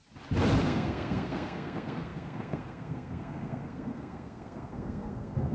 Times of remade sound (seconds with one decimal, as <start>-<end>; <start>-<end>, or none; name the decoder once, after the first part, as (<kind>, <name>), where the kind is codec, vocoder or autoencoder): 0.6-5.5 (codec, SNAC)